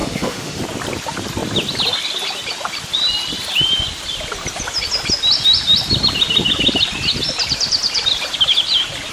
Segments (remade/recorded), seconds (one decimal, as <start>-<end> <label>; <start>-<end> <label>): 0.0-0.6 remade; 0.6-9.1 recorded